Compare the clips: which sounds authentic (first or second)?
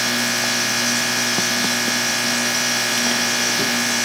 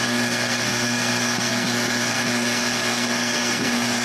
first